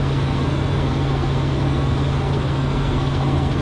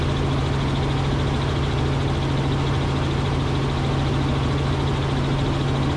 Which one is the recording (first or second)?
second